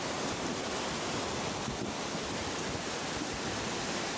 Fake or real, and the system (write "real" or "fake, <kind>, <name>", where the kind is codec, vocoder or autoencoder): real